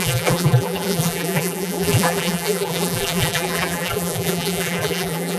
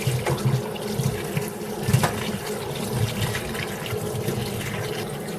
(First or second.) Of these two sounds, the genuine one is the second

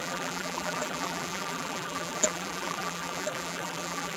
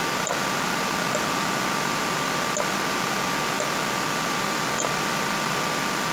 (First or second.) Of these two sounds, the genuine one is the second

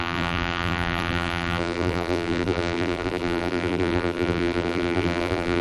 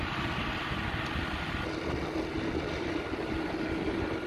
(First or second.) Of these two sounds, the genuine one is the second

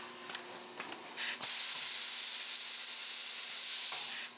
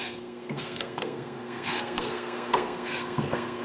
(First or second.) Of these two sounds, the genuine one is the first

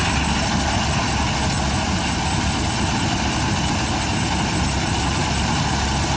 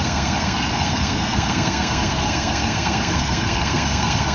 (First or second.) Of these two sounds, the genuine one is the first